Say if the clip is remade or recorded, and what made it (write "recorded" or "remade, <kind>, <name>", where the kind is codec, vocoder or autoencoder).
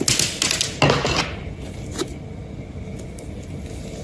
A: recorded